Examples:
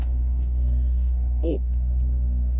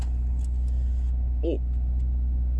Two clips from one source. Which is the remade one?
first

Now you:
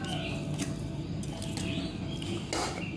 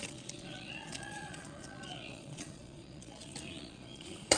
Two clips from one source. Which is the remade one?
second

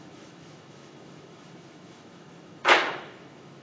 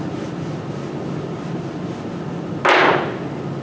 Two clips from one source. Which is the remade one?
first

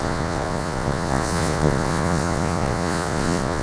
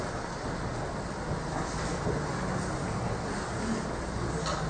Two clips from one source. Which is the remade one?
first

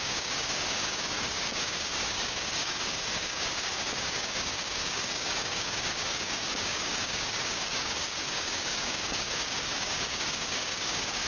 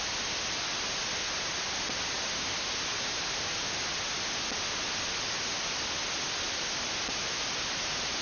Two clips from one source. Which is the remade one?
first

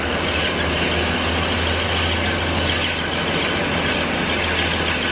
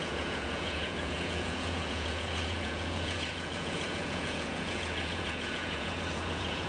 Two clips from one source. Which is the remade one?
second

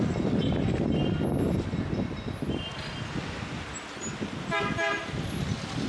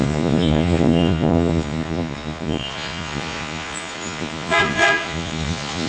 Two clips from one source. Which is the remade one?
second